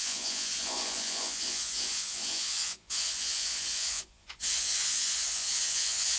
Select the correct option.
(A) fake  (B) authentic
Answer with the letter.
A